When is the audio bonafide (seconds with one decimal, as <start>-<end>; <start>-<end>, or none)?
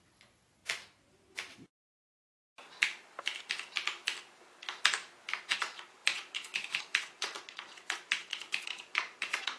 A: 0.6-5.5